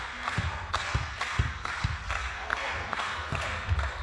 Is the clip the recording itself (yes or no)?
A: no